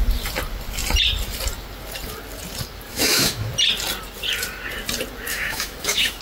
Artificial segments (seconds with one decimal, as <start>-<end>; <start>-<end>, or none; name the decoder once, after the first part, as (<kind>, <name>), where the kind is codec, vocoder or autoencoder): 2.9-3.5 (autoencoder, DAC-VAE); 5.3-6.2